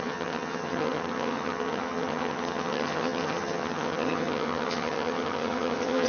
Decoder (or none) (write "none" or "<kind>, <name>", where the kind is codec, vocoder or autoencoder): vocoder, HiFi-GAN